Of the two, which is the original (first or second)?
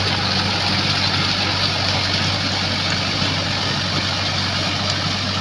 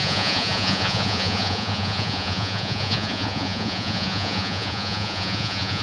first